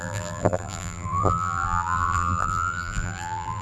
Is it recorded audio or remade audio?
remade